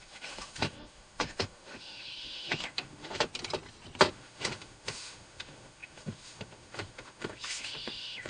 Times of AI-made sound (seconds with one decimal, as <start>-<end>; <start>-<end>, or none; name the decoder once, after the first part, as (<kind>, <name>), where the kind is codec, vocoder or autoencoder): 0.0-3.3 (autoencoder, DAC-VAE); 4.1-8.3